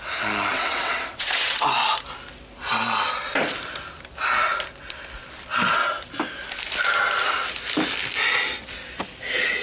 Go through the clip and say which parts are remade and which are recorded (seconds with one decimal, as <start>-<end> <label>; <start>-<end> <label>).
0.0-0.5 recorded; 0.5-1.8 remade; 1.8-9.6 recorded